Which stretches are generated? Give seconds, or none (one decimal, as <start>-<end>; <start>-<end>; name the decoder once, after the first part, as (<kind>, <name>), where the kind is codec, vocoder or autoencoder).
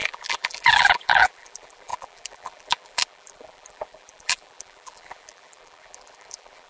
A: 0.0-6.7 (vocoder, BigVGAN v2)